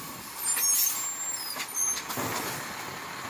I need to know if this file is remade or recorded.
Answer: recorded